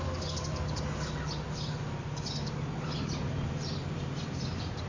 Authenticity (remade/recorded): recorded